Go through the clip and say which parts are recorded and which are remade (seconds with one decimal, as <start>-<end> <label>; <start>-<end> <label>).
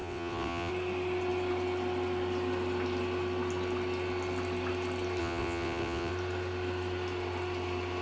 0.0-0.7 remade; 0.7-5.2 recorded; 5.2-6.1 remade; 6.1-8.0 recorded